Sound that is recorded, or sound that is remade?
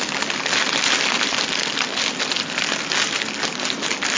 recorded